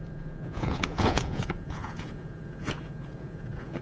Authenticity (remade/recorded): remade